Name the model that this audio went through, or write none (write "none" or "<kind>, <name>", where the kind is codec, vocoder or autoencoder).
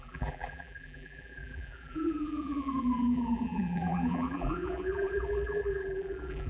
vocoder, BigVGAN v2